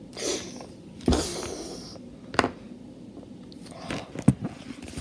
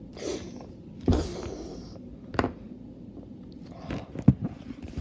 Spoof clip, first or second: second